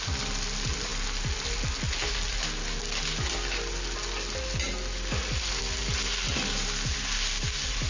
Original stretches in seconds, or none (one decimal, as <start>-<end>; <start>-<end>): 0.0-7.9